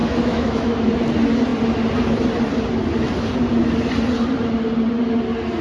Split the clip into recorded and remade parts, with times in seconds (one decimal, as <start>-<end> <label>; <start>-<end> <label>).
0.0-0.9 remade; 0.9-5.6 recorded